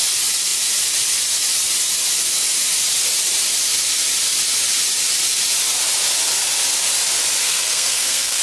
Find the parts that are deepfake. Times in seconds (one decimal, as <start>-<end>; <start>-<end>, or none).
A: 7.4-8.4